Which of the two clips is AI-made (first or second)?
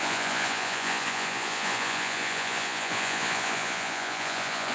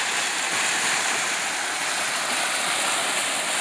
first